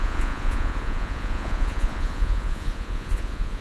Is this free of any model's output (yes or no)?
no